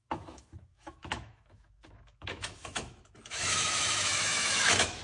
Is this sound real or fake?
fake